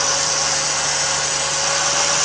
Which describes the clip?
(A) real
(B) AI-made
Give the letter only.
A